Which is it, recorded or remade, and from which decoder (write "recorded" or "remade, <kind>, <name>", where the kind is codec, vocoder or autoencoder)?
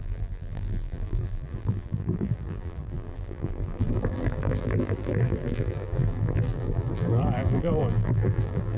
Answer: remade, vocoder, BigVGAN v2